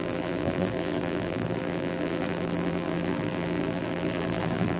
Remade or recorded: remade